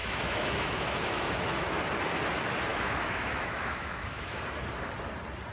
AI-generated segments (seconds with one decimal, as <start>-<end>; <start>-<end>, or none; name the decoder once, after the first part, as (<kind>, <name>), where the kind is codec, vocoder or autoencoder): 0.0-1.8 (autoencoder, DAC-VAE); 2.7-4.4